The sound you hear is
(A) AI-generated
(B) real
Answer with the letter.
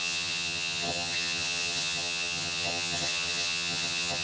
A